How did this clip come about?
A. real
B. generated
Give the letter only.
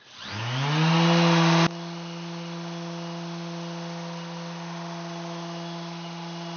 A